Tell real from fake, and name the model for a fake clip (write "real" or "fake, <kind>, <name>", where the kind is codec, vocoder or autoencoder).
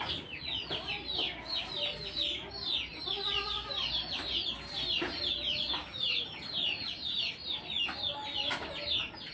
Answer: real